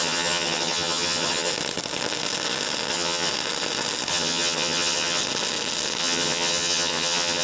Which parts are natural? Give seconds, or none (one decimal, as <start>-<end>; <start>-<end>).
1.5-2.9; 3.3-4.1; 5.2-6.0